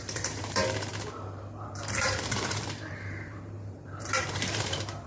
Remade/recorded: remade